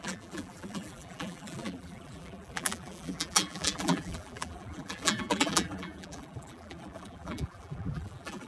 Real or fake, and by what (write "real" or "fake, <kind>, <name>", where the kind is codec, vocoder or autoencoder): fake, vocoder, BigVGAN v2